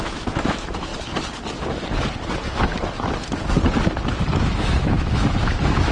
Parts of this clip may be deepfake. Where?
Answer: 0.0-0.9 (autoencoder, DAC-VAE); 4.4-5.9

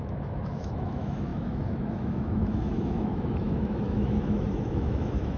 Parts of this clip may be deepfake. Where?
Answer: 0.0-5.4 (autoencoder, DAC-VAE)

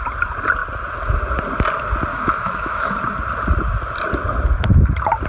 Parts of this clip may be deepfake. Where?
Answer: 2.1-3.0 (autoencoder, DAC-VAE)

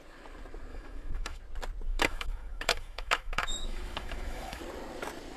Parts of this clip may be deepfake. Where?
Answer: 0.7-1.4 (autoencoder, DAC-VAE); 1.9-4.6

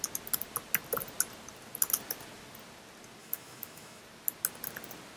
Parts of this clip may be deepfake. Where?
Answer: 3.2-4.0 (autoencoder, DAC-VAE)